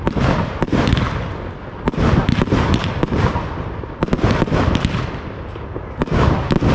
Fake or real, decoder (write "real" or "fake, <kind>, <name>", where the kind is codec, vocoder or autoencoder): real